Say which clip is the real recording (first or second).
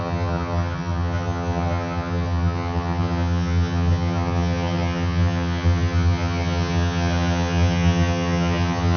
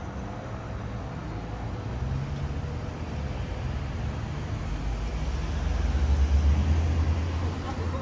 second